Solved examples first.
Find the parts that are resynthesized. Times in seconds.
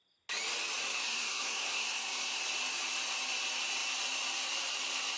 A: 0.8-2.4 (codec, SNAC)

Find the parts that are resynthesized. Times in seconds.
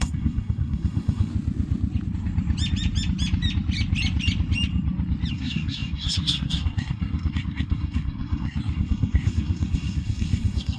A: 0.0-1.3 (codec, SNAC); 5.3-10.8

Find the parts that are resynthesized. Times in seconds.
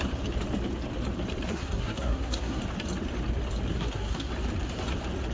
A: 1.5-2.6 (codec, SNAC); 3.7-4.3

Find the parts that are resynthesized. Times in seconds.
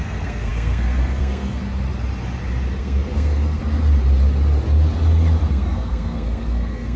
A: 0.0-1.6 (codec, SNAC); 2.8-3.6; 5.5-7.0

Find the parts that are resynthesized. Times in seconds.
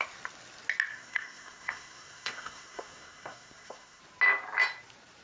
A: 0.9-4.0 (codec, SNAC)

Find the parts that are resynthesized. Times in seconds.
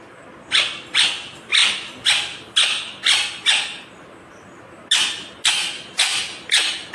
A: none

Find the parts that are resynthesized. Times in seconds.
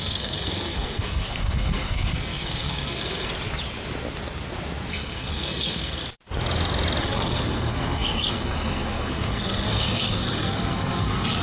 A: 0.0-3.3 (codec, SNAC); 4.9-6.0; 7.0-11.4